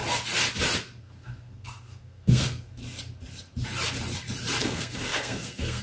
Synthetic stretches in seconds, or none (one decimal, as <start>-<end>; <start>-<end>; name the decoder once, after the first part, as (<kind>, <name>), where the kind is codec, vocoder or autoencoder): 1.0-2.8 (codec, SNAC); 4.6-5.8